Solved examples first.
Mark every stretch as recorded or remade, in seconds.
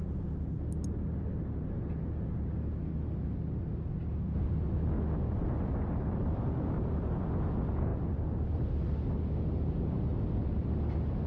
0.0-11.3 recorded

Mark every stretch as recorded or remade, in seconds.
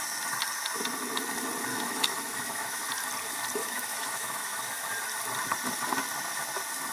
0.0-1.7 recorded; 1.7-2.9 remade; 2.9-3.6 recorded; 3.6-4.9 remade; 4.9-6.9 recorded